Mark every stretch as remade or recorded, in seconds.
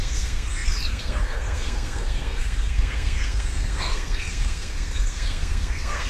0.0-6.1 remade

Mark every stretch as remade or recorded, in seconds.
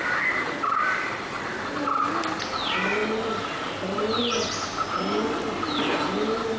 0.0-6.6 recorded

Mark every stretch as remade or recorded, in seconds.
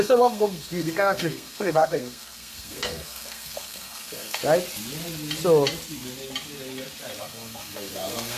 0.0-4.4 remade; 4.4-7.2 recorded; 7.2-8.4 remade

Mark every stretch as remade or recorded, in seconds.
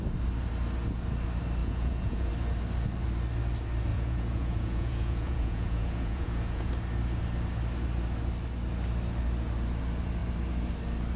0.0-1.6 recorded; 1.6-2.3 remade; 2.3-3.9 recorded; 3.9-6.7 remade; 6.7-11.2 recorded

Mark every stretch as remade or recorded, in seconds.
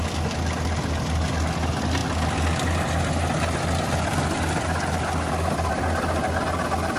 0.0-7.0 recorded